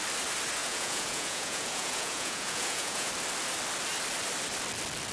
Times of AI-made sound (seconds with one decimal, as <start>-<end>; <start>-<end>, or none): 0.6-3.1